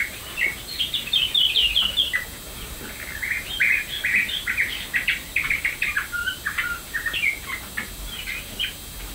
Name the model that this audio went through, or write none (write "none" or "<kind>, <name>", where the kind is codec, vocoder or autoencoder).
none